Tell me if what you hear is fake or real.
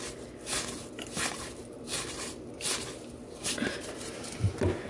real